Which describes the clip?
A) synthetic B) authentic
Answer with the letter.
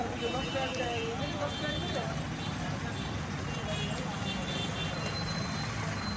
B